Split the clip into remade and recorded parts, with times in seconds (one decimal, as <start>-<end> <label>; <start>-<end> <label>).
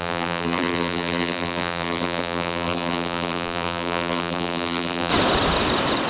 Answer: 0.0-5.1 remade; 5.1-6.1 recorded